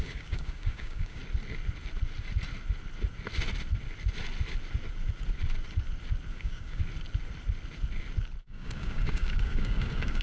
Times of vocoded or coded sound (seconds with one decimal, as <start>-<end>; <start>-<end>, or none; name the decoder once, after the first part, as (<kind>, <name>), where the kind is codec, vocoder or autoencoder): 0.0-1.2 (codec, DAC); 6.3-6.8; 8.4-10.2